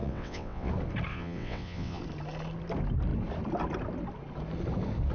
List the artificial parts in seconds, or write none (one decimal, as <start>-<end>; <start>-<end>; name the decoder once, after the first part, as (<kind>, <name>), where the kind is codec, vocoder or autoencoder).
0.0-0.7 (vocoder, WaveNeXt); 1.1-2.0